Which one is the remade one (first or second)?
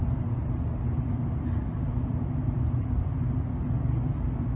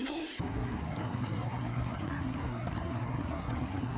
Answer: second